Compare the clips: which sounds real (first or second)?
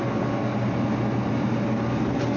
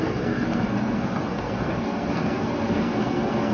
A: first